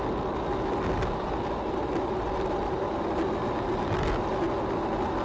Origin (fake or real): real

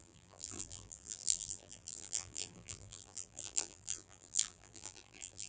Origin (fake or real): fake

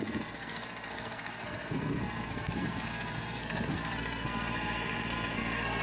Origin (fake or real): fake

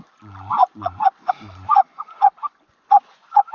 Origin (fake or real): fake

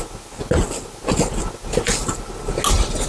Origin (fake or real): real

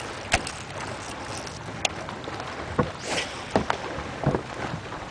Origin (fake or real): real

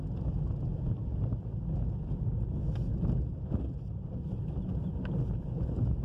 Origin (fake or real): real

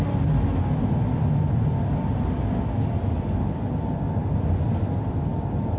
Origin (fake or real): real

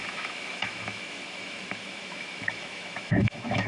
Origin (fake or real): fake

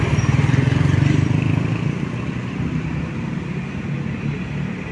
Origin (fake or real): real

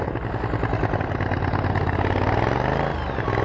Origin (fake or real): real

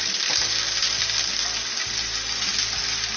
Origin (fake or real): real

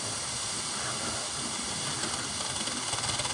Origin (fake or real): real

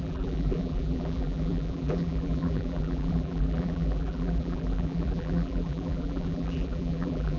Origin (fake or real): fake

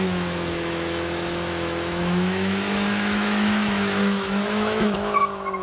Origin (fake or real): fake